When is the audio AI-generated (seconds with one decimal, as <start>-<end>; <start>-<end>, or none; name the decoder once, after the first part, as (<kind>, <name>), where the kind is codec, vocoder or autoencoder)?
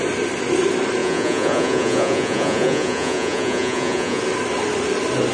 1.0-4.2 (vocoder, Vocos)